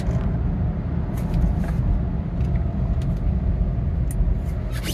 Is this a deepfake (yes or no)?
no